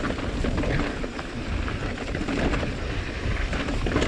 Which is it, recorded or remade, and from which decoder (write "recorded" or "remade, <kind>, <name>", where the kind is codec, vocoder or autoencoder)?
recorded